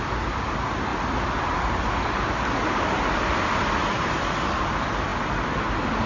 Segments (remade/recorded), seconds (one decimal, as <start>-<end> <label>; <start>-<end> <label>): 0.0-6.1 recorded